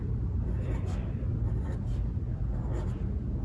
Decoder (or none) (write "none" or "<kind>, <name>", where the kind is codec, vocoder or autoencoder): none